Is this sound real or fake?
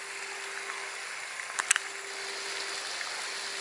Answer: real